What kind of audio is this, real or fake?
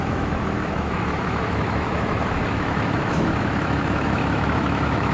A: fake